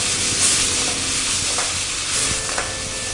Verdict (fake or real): real